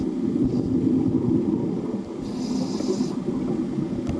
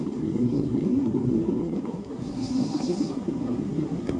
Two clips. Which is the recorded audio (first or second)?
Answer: first